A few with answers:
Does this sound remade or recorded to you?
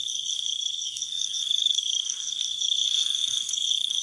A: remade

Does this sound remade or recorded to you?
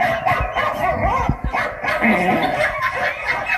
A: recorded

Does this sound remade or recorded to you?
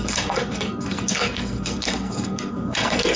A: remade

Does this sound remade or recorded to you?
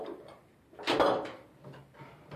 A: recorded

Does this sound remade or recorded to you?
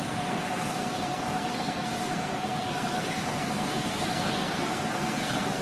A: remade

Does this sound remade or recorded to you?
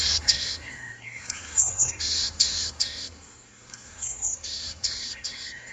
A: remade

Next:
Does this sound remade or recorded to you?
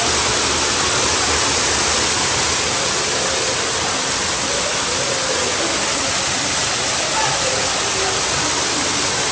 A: recorded